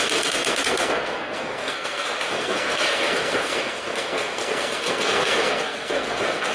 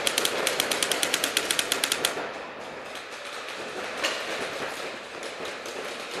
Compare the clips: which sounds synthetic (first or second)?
first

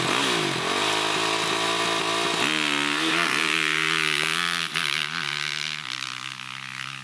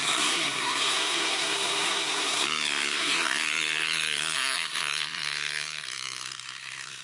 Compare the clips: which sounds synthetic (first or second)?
second